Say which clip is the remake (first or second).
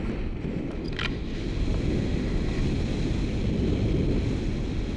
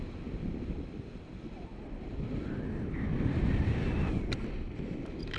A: second